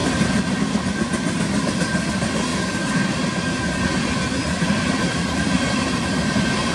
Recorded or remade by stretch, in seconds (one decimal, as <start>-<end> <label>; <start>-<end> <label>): 0.0-2.5 recorded; 2.5-3.8 remade; 3.8-4.4 recorded; 4.4-6.7 remade